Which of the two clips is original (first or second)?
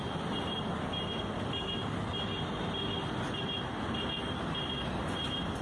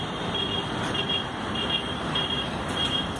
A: first